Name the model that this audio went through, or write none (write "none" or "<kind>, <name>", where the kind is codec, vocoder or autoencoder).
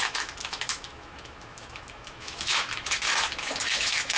autoencoder, DAC-VAE